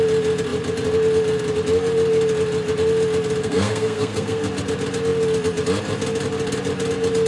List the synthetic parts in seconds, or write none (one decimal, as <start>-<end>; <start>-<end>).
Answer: 3.4-4.5